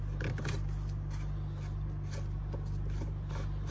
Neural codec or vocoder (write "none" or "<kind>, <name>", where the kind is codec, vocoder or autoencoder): none